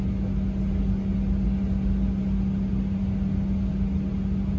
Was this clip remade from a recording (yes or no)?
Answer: no